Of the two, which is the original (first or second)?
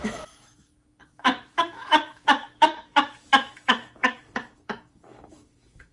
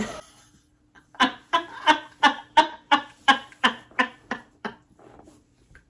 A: second